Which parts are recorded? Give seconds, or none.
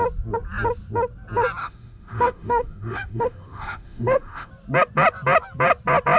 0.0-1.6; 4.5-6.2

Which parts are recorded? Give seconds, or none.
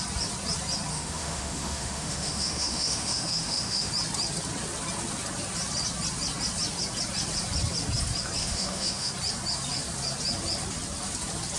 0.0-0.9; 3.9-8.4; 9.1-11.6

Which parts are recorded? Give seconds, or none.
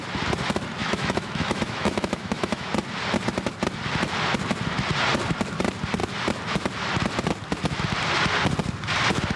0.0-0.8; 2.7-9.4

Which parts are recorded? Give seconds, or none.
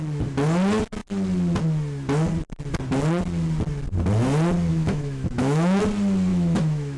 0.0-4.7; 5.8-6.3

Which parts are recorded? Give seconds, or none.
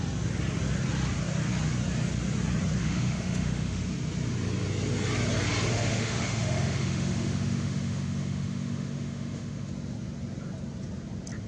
0.0-2.8; 3.8-5.7; 9.7-11.5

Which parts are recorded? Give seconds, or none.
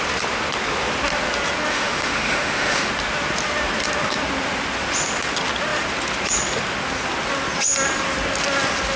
0.0-1.7; 2.9-9.0